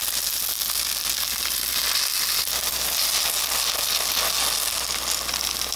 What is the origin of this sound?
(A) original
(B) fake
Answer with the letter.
A